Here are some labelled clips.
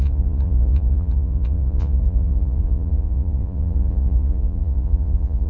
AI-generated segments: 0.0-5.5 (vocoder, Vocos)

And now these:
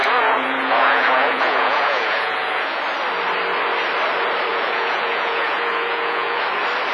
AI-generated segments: 0.0-2.8 (vocoder, Vocos); 4.5-6.4

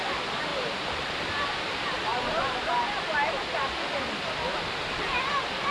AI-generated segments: 0.5-1.1 (vocoder, BigVGAN v2)

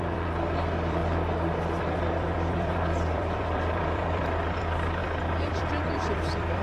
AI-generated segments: 0.0-1.0 (vocoder, BigVGAN v2); 1.8-6.6

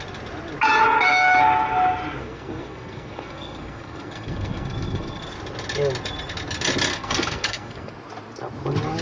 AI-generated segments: 2.2-5.2 (codec, SNAC); 6.9-7.9

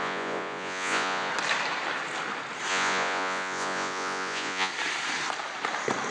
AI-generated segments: 0.0-1.3 (vocoder, Vocos); 2.7-4.7

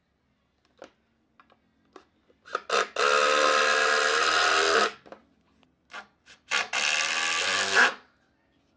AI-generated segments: none